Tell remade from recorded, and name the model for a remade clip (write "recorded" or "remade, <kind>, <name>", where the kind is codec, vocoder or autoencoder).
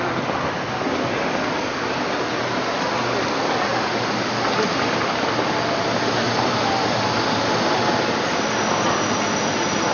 recorded